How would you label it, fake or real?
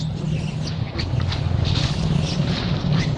real